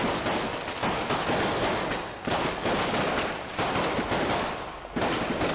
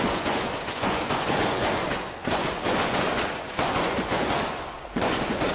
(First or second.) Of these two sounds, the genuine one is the first